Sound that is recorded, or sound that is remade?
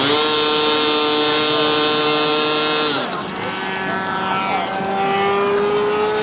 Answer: recorded